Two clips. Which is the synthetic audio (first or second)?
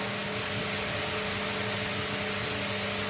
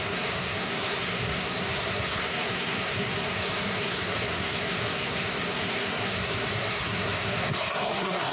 second